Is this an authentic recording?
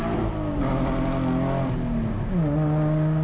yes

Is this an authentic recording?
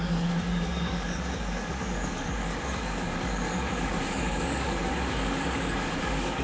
no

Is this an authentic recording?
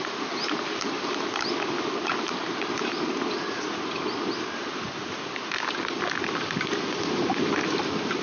yes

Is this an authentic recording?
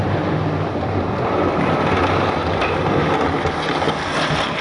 yes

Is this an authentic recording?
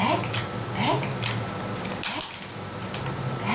yes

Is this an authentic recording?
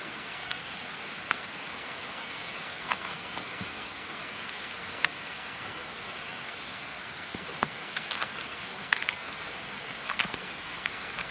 no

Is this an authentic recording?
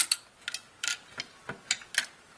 yes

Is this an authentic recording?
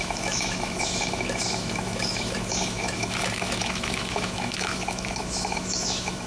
no